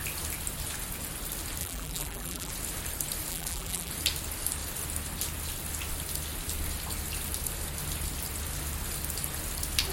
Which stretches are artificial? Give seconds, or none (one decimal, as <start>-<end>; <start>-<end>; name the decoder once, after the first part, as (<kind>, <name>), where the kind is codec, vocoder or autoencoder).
1.6-2.5 (vocoder, BigVGAN v2); 3.3-3.9